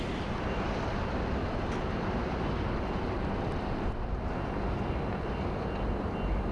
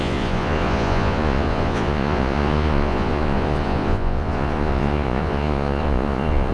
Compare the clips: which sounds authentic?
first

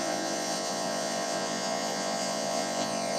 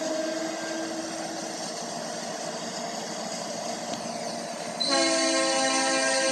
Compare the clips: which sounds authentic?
second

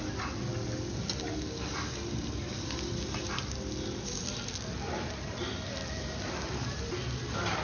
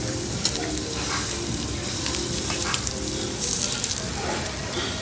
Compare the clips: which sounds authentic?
first